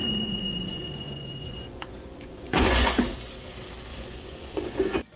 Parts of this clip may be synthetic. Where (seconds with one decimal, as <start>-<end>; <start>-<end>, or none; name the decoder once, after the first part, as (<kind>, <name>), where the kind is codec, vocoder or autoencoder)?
0.0-3.1 (vocoder, Vocos); 3.9-5.2

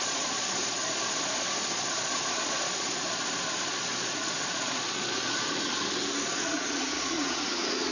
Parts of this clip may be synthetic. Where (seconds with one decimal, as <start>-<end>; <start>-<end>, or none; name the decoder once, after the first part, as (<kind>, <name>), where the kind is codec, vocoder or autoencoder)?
0.0-5.7 (vocoder, Vocos); 6.4-7.9

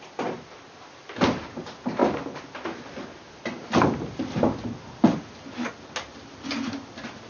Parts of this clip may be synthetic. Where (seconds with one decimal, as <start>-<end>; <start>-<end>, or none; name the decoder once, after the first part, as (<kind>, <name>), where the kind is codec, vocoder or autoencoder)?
none

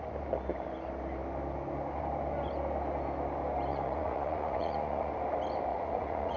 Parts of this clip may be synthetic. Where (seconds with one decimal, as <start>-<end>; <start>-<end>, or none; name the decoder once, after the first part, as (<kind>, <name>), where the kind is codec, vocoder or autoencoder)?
3.7-5.1 (vocoder, Vocos); 5.7-6.4

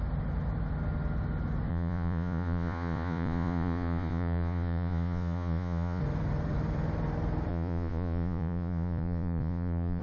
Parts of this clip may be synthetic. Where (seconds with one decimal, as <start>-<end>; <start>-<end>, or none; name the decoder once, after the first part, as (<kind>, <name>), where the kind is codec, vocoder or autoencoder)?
1.7-6.0 (vocoder, Vocos); 7.5-10.0

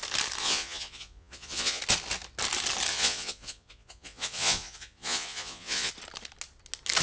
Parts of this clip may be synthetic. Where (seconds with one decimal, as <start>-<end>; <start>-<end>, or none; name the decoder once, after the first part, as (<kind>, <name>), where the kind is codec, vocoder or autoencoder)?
0.4-1.8 (vocoder, Vocos); 2.9-5.9

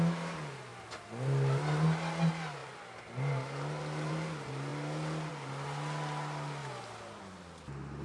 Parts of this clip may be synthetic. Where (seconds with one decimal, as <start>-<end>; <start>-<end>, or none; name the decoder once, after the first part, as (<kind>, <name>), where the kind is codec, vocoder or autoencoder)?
none

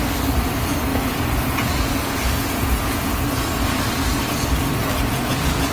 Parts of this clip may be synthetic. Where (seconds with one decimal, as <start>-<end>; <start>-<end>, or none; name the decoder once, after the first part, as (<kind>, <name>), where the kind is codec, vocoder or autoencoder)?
0.9-3.1 (vocoder, Vocos); 4.8-5.7